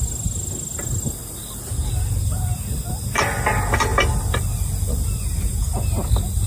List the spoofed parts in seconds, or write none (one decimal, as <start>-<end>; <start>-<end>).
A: none